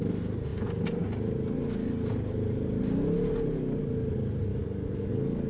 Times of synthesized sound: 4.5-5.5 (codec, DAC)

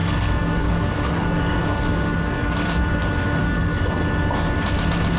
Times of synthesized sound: 0.0-2.8 (codec, DAC); 3.4-3.9